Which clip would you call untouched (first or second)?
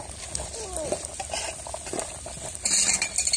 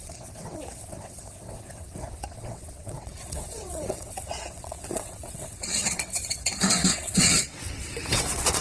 first